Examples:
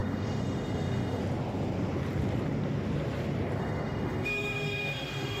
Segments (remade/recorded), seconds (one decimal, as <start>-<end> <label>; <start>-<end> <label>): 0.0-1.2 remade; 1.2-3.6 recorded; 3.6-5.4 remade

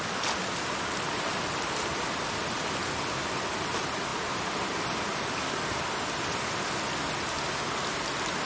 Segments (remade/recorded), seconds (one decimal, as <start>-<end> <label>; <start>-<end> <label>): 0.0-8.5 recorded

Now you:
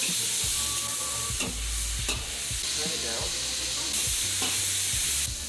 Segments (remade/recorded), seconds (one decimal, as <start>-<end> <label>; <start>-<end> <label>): 0.0-5.5 recorded